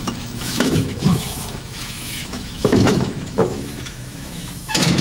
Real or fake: fake